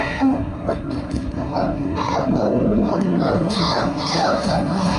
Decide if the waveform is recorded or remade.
remade